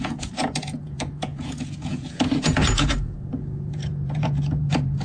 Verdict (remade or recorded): remade